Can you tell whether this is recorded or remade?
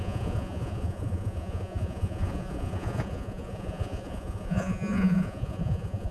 remade